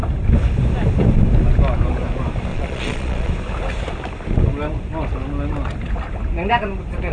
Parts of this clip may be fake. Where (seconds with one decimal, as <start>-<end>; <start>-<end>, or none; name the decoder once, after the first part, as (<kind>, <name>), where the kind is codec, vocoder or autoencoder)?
2.5-3.3 (vocoder, Vocos)